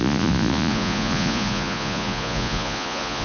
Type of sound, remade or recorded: remade